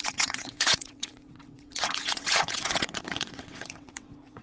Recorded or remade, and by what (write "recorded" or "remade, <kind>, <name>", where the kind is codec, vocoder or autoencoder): remade, vocoder, WaveNeXt